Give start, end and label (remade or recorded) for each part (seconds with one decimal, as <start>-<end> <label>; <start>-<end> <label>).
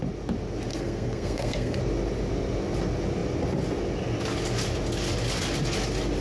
0.0-0.7 recorded; 0.7-1.8 remade; 1.8-6.2 recorded